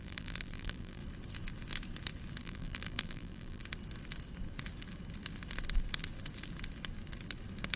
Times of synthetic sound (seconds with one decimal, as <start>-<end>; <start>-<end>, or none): 0.0-1.0; 2.4-3.6